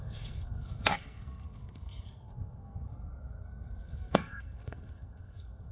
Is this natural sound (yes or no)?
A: no